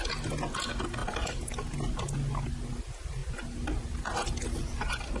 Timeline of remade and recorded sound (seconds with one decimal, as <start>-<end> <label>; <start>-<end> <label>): 0.0-5.2 recorded